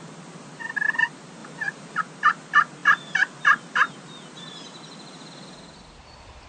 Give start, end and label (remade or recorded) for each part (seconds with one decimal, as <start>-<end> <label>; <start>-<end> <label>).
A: 0.0-6.5 recorded